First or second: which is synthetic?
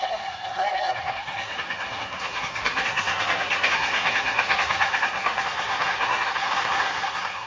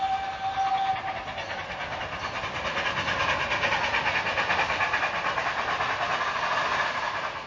first